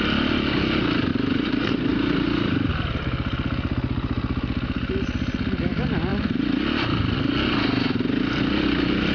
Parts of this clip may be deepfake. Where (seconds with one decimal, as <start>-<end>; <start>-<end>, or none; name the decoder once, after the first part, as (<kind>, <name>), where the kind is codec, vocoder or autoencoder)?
1.1-2.7 (vocoder, BigVGAN v2)